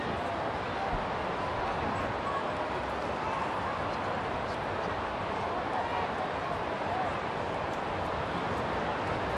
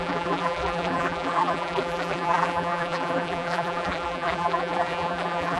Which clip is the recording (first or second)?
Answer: first